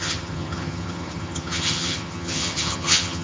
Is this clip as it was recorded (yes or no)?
no